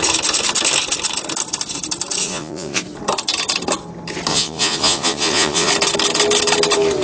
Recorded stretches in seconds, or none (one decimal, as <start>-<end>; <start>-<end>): 0.0-2.2; 2.8-4.3; 5.7-7.0